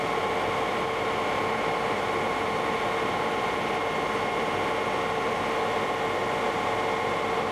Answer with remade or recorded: recorded